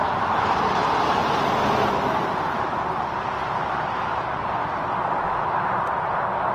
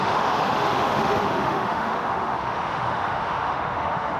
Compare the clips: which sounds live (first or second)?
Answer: first